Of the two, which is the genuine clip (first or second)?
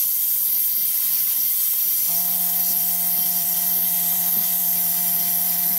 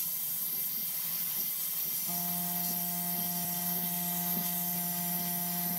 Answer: second